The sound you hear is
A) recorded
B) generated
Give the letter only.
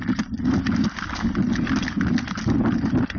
A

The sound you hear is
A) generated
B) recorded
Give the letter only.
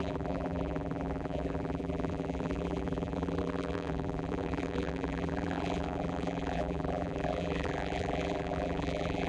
A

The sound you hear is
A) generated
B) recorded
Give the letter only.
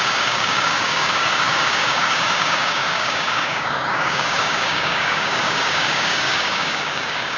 A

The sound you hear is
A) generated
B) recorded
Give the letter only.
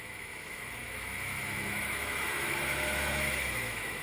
A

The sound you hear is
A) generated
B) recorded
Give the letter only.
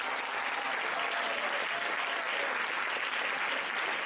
B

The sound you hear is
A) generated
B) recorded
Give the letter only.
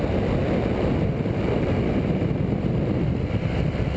B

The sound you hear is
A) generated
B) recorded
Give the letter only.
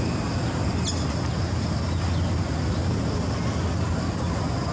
B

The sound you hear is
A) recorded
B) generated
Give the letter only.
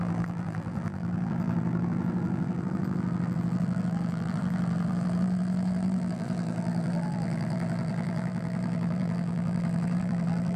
B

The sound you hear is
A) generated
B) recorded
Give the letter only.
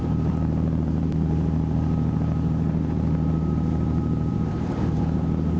A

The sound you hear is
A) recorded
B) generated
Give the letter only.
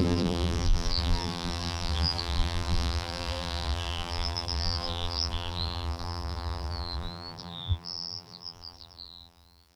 B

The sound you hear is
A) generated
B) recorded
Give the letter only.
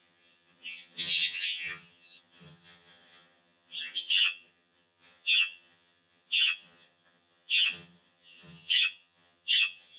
A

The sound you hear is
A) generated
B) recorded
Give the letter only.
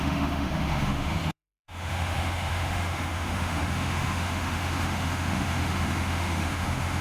A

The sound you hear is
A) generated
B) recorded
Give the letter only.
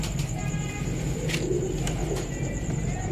B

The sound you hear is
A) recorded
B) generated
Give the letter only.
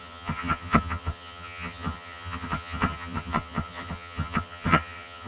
B